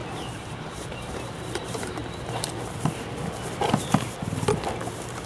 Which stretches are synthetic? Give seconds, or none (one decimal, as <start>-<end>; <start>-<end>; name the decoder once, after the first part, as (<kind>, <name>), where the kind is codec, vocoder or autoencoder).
0.0-2.0 (vocoder, BigVGAN v2)

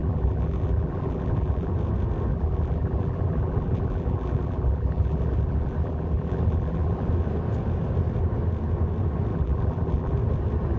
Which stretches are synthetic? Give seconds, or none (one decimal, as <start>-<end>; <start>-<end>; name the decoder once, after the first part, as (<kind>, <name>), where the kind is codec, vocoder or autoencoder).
0.0-1.7 (vocoder, BigVGAN v2); 2.3-7.1; 9.3-10.1

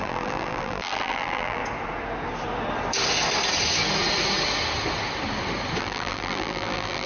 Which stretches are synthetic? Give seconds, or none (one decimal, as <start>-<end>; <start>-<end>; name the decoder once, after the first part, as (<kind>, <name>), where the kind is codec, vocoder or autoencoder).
0.0-1.6 (vocoder, BigVGAN v2); 5.8-7.1

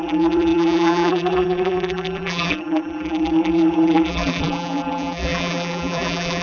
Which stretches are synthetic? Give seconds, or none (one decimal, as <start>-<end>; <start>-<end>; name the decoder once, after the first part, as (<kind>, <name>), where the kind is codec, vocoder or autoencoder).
0.0-6.4 (vocoder, BigVGAN v2)

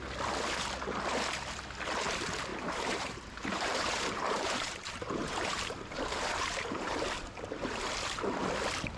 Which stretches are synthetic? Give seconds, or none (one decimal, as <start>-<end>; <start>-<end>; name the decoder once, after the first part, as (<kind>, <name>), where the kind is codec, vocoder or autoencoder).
2.5-7.0 (vocoder, BigVGAN v2)

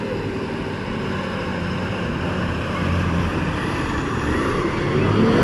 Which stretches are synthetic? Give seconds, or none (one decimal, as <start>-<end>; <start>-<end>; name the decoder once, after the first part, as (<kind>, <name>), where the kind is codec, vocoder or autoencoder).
1.5-4.7 (vocoder, BigVGAN v2)

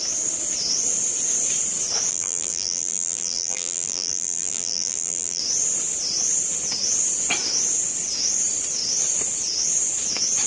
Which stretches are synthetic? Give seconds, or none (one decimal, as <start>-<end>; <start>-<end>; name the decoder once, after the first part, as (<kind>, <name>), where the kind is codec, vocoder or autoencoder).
2.1-5.4 (vocoder, BigVGAN v2)

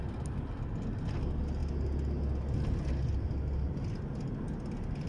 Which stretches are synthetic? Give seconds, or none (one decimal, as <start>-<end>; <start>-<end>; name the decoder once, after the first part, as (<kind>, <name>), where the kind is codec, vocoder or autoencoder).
none